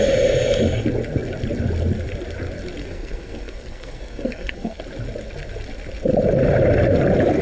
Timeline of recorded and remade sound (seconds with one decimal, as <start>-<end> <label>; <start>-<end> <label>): 0.0-2.8 recorded; 2.8-4.8 remade; 4.8-7.4 recorded